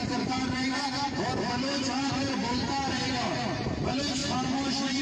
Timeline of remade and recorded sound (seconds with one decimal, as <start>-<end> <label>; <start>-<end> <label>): 0.0-3.0 remade; 3.0-4.2 recorded; 4.2-5.0 remade